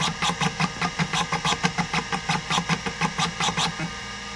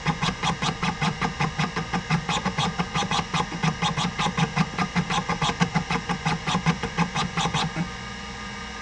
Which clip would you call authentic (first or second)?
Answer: first